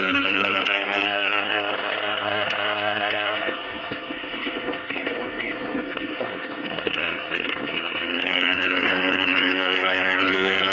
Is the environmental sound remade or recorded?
remade